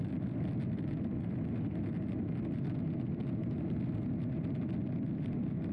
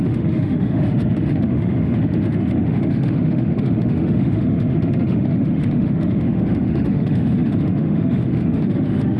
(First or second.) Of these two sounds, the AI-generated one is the second